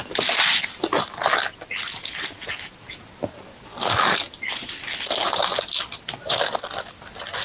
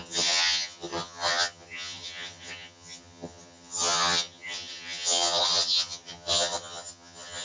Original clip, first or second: first